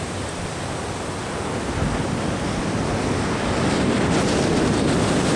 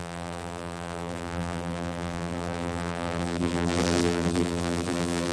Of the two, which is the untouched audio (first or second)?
first